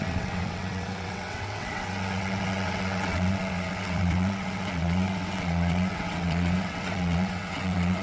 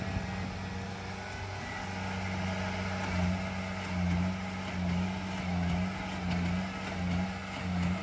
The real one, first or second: second